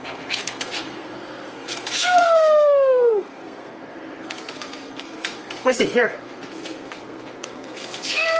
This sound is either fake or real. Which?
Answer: fake